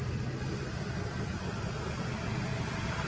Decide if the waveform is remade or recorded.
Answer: recorded